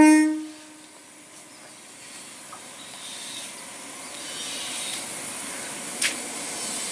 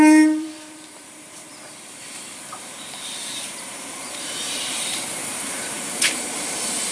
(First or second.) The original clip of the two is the first